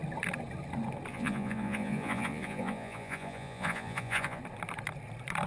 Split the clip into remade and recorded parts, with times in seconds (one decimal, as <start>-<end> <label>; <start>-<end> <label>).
0.0-1.1 recorded; 1.1-4.4 remade; 4.4-5.5 recorded